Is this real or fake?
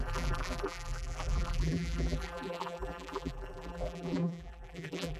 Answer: fake